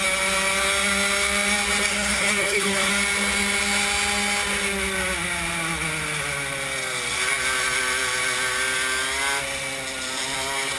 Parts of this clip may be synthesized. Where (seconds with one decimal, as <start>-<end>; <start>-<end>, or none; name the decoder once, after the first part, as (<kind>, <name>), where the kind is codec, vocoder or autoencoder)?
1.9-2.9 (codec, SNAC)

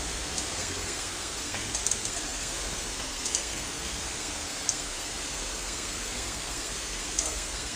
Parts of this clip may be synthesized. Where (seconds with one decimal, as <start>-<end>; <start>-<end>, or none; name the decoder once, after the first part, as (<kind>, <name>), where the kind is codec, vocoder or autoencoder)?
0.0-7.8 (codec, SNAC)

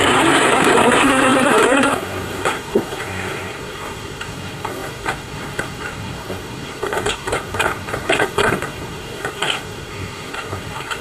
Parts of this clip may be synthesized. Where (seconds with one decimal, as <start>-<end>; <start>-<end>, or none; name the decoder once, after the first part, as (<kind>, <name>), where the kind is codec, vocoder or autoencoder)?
0.0-11.0 (codec, SNAC)

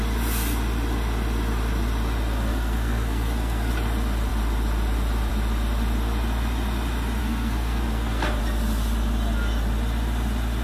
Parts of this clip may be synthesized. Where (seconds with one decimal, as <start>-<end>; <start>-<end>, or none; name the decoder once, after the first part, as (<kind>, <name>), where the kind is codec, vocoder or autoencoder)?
2.5-3.7 (codec, SNAC); 7.2-8.4

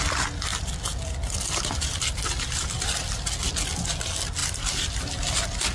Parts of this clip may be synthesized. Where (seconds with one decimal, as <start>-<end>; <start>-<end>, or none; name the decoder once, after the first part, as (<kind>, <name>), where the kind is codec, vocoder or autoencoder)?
none